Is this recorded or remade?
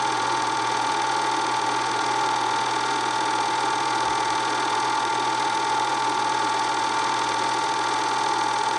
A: remade